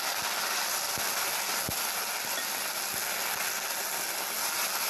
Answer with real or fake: real